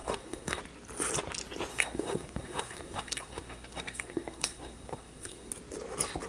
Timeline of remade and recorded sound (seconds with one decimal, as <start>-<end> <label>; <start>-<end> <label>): 0.0-0.6 remade; 0.6-1.7 recorded; 1.7-5.5 remade; 5.5-6.3 recorded